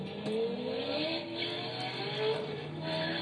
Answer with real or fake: real